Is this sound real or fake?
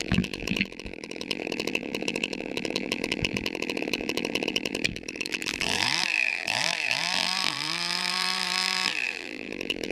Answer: fake